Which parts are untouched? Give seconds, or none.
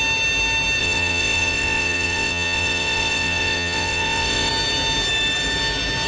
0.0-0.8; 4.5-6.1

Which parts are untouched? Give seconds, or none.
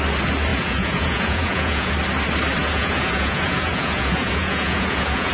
0.0-0.5; 1.9-2.6